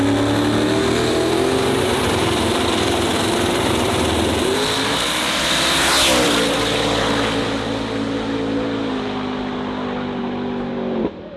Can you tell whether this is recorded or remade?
recorded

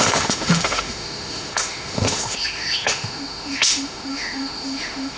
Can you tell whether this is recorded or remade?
remade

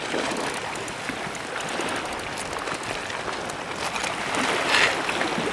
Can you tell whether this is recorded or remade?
recorded